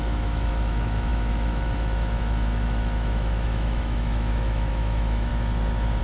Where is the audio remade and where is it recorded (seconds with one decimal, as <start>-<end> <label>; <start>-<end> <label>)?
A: 0.0-5.3 remade; 5.3-6.0 recorded